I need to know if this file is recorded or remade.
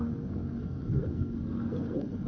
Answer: remade